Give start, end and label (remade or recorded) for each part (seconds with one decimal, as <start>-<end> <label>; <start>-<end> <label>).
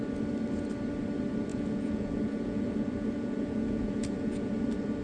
0.0-1.5 recorded; 1.5-4.5 remade; 4.5-5.0 recorded